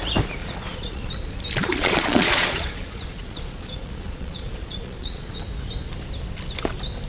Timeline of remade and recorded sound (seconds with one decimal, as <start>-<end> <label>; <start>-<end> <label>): 0.0-0.4 recorded; 0.4-1.1 remade; 1.1-1.6 recorded; 1.6-5.4 remade; 5.4-7.1 recorded